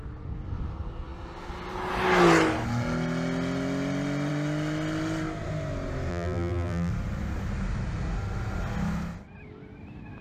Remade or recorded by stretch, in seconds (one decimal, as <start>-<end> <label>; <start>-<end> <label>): 0.0-6.1 recorded; 6.1-6.9 remade; 6.9-10.2 recorded